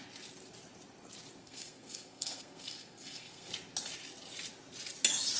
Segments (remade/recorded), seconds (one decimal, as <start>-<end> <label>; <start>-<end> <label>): 0.0-1.4 recorded; 1.4-3.5 remade; 3.5-5.4 recorded

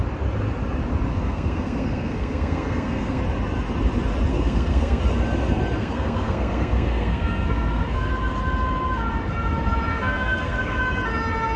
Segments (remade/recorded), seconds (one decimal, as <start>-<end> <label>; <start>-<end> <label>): 0.0-1.1 recorded; 1.1-3.2 remade; 3.2-4.3 recorded; 4.3-5.0 remade; 5.0-5.8 recorded; 5.8-8.1 remade; 8.1-9.9 recorded; 9.9-10.8 remade; 10.8-11.6 recorded

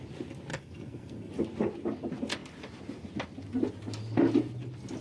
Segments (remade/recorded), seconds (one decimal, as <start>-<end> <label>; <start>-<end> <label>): 0.0-0.5 recorded; 0.5-1.3 remade; 1.3-5.0 recorded

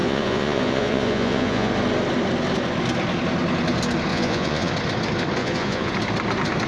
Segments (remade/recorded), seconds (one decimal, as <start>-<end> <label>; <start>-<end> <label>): 0.0-1.7 remade; 1.7-4.1 recorded; 4.1-4.7 remade; 4.7-5.4 recorded; 5.4-5.9 remade; 5.9-6.7 recorded

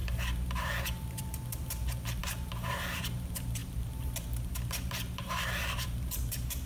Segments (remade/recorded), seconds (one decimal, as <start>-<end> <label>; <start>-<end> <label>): 0.0-6.7 remade

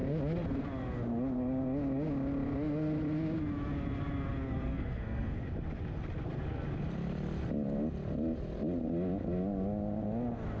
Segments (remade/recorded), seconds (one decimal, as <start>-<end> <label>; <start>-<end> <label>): 0.0-4.7 recorded; 4.7-5.4 remade; 5.4-10.6 recorded

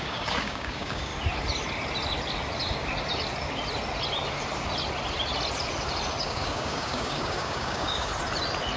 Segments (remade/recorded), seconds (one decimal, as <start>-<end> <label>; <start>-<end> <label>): 0.0-1.1 remade; 1.1-6.2 recorded; 6.2-8.1 remade; 8.1-8.8 recorded

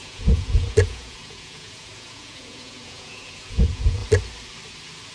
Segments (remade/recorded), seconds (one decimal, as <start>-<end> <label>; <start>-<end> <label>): 0.0-4.0 remade; 4.0-5.1 recorded